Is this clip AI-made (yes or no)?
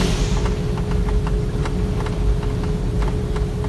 no